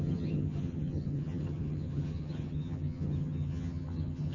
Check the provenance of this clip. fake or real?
fake